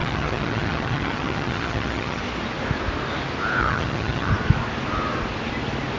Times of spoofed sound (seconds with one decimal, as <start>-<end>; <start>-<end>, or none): 0.0-2.2; 3.6-4.3